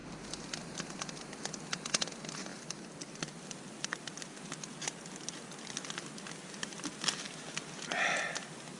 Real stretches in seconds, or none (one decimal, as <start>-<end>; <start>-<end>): 0.0-8.8